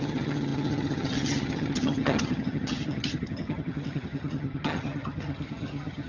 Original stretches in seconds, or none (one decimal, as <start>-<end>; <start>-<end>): none